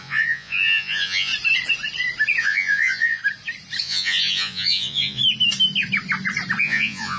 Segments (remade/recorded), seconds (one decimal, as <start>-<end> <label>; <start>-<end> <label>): 0.0-1.3 remade; 1.3-2.4 recorded; 2.4-3.2 remade; 3.2-3.8 recorded; 3.8-5.2 remade; 5.2-6.6 recorded; 6.6-7.2 remade

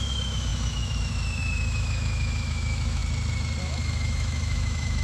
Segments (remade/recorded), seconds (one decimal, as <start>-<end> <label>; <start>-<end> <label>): 0.0-3.0 remade; 3.0-3.6 recorded; 3.6-5.0 remade